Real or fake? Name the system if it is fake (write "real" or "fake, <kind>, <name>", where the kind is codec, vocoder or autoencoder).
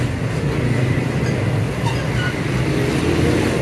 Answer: real